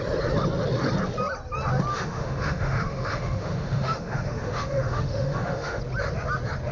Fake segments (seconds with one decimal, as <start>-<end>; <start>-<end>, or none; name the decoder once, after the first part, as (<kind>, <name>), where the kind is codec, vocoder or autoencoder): 1.9-5.8 (autoencoder, DAC-VAE)

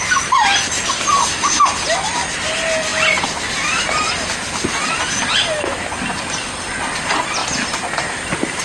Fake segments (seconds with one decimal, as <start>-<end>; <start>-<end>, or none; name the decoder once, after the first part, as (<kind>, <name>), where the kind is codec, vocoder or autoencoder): 1.2-1.7 (autoencoder, DAC-VAE)

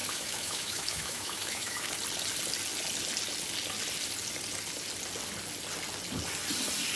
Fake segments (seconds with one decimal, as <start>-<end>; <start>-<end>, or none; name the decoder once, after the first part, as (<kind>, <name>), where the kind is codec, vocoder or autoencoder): 0.0-1.9 (autoencoder, DAC-VAE)